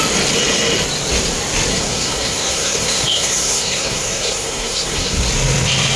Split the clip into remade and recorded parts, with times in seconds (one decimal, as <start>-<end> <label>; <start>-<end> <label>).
0.0-1.7 recorded; 1.7-5.2 remade; 5.2-6.0 recorded

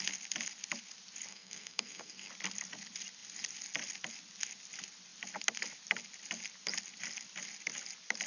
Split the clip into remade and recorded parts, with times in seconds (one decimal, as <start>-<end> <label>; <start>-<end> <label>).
0.0-1.3 recorded; 1.3-2.3 remade; 2.3-8.3 recorded

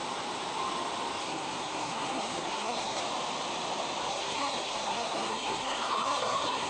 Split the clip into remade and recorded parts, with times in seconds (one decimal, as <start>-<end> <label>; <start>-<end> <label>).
0.0-1.2 recorded; 1.2-3.0 remade; 3.0-4.1 recorded; 4.1-6.7 remade

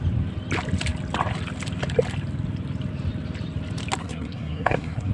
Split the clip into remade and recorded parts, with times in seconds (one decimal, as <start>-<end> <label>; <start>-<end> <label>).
0.0-4.0 recorded; 4.0-5.1 remade

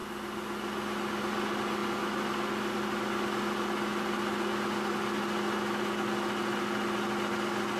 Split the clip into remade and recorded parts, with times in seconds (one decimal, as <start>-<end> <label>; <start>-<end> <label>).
0.0-7.8 recorded

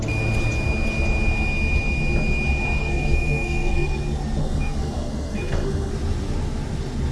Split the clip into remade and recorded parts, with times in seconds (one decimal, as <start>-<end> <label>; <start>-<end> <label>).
0.0-2.8 recorded; 2.8-4.0 remade; 4.0-4.4 recorded; 4.4-5.9 remade; 5.9-7.1 recorded

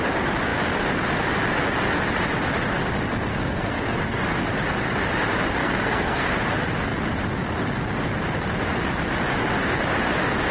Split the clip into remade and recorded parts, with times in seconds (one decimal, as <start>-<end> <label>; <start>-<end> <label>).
0.0-3.3 recorded; 3.3-4.2 remade; 4.2-5.6 recorded; 5.6-6.3 remade; 6.3-10.5 recorded